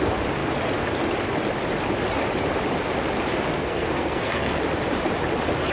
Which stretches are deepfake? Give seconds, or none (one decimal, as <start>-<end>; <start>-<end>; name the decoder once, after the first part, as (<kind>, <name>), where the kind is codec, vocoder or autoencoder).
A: 3.6-4.6 (codec, SNAC)